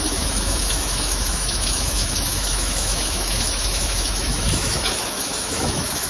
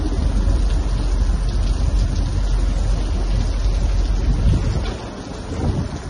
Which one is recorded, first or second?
second